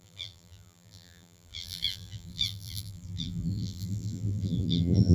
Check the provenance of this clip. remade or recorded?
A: remade